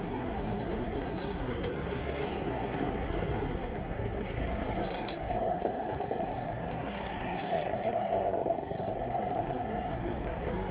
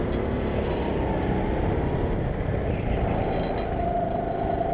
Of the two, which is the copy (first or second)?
first